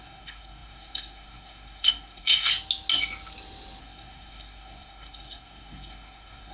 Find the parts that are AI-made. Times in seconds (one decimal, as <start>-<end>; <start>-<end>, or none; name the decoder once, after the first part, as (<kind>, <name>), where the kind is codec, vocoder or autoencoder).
0.0-2.5 (codec, SNAC); 3.8-6.5